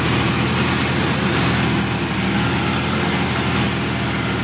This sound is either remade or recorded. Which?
recorded